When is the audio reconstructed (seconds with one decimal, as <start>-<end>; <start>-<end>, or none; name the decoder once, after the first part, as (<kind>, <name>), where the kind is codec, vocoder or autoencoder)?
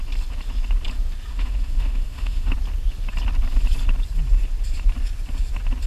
1.3-2.5 (autoencoder, DAC-VAE)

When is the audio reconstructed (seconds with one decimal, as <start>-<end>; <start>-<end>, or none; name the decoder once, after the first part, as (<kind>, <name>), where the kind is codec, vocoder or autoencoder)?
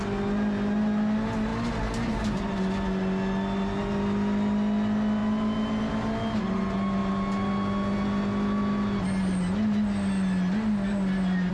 none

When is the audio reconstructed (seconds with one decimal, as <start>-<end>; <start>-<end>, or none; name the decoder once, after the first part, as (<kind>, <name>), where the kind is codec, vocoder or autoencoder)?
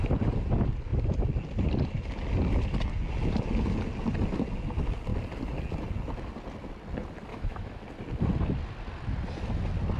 7.3-7.8 (autoencoder, DAC-VAE)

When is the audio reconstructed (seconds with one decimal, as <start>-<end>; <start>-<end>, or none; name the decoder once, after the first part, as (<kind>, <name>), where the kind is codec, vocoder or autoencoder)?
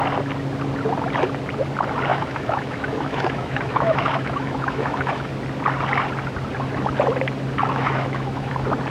2.1-5.3 (autoencoder, DAC-VAE); 7.6-8.5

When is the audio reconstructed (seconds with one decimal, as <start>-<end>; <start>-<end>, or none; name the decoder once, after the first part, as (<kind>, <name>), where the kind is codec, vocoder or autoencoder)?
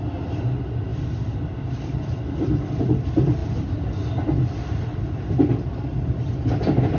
none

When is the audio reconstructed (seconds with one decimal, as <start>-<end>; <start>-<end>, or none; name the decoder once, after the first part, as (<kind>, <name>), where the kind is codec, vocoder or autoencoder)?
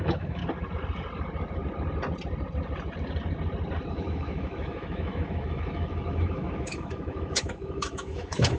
0.0-0.4 (autoencoder, DAC-VAE); 3.9-8.6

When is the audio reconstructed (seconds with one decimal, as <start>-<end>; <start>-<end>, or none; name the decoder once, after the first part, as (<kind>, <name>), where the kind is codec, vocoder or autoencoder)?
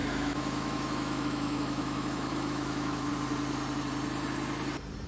0.0-3.1 (autoencoder, DAC-VAE)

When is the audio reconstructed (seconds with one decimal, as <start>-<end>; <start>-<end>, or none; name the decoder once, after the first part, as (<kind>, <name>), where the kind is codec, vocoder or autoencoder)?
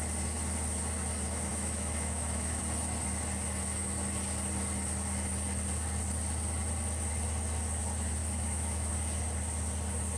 1.5-2.6 (autoencoder, DAC-VAE); 8.2-8.9